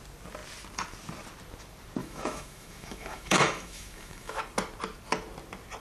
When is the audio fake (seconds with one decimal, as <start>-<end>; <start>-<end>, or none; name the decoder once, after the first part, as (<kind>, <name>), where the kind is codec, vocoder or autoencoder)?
2.0-4.4 (autoencoder, DAC-VAE)